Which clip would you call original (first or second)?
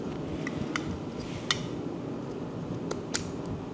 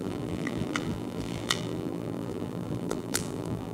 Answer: first